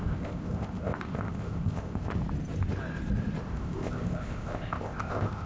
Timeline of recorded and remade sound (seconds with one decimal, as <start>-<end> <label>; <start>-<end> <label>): 0.0-2.2 remade; 2.2-3.4 recorded; 3.4-5.5 remade